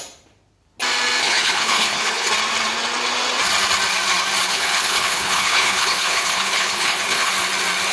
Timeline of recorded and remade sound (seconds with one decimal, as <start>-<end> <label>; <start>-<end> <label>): 0.0-1.2 recorded; 1.2-2.3 remade; 2.3-4.5 recorded; 4.5-7.3 remade; 7.3-7.9 recorded